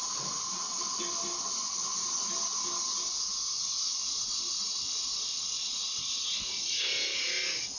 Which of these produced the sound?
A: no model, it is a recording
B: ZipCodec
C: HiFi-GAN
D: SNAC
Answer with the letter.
A